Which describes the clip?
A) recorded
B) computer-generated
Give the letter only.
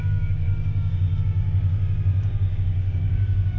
B